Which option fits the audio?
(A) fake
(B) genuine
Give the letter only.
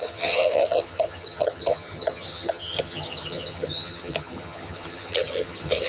A